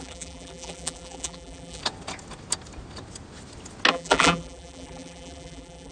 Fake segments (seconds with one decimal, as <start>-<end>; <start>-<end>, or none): 0.0-1.8; 3.9-5.9